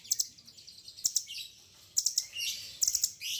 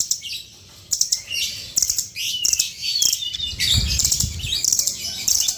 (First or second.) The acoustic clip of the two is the first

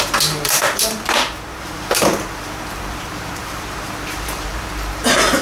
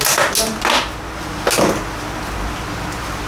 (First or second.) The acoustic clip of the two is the second